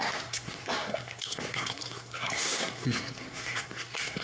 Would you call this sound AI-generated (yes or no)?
yes